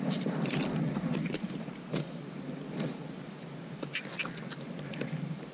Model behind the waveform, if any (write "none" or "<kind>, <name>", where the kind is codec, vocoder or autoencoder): none